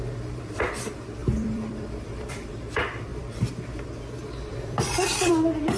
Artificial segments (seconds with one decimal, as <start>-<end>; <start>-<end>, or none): 1.2-2.5; 3.1-3.9; 4.5-5.3